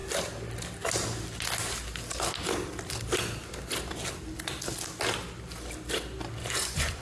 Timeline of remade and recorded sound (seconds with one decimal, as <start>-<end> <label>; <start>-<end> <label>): 0.0-6.4 recorded; 6.4-7.0 remade